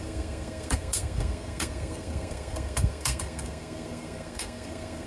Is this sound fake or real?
fake